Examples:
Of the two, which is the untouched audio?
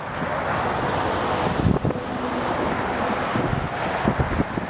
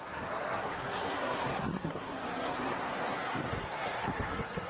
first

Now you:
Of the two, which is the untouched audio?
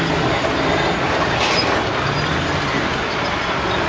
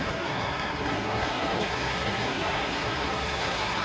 first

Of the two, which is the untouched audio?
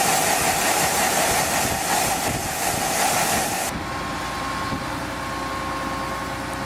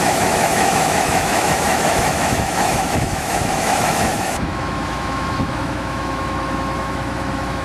first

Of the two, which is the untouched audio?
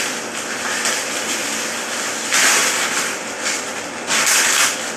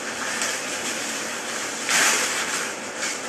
first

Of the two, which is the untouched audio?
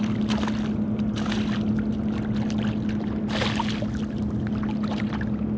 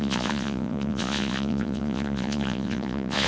first